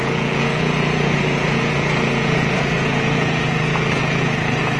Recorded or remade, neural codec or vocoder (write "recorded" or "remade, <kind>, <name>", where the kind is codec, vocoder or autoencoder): remade, vocoder, Vocos